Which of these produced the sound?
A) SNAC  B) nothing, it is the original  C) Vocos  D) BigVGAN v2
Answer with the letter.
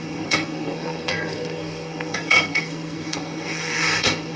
A